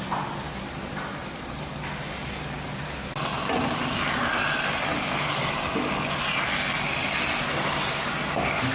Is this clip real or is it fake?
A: real